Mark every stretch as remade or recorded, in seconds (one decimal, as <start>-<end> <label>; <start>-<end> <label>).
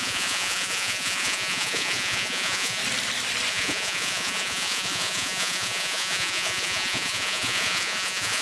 0.0-2.8 remade; 2.8-3.5 recorded; 3.5-8.4 remade